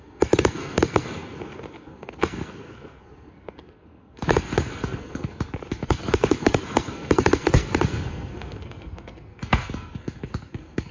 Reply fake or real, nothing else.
fake